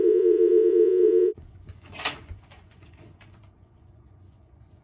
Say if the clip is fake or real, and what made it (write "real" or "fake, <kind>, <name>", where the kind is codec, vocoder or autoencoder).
fake, vocoder, Vocos